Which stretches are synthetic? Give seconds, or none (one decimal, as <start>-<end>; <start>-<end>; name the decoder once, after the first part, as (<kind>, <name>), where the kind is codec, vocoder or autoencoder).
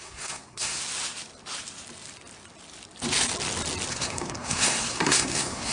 0.0-0.8 (codec, SNAC); 3.9-5.7